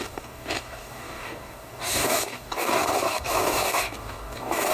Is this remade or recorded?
remade